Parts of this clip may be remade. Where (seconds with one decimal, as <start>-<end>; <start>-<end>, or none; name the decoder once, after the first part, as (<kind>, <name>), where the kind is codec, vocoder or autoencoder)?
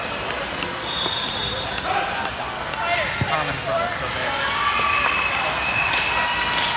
none